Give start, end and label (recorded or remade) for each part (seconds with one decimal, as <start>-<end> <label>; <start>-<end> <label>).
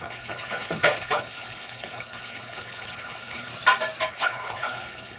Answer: 0.0-3.5 remade; 3.5-4.1 recorded; 4.1-5.2 remade